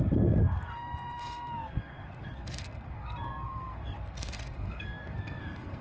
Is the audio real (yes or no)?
no